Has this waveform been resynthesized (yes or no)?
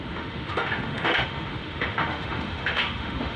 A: yes